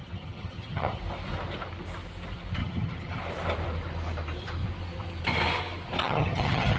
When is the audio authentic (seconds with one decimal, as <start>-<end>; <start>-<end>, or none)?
1.0-2.6; 3.2-6.0